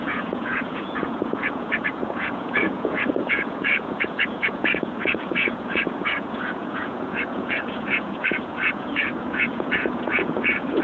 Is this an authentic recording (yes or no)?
no